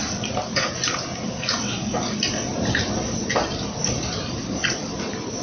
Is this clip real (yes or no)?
no